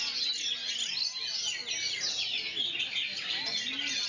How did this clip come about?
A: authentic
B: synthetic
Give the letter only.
A